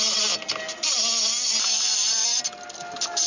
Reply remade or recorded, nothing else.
recorded